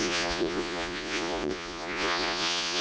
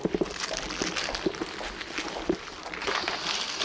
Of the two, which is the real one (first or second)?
second